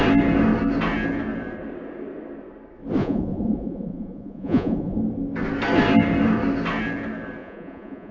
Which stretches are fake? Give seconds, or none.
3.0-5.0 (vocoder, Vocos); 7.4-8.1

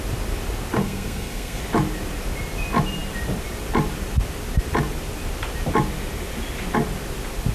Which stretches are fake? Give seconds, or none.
0.8-1.6 (codec, SNAC)